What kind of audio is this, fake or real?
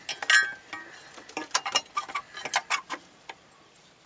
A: real